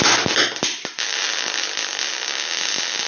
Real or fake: real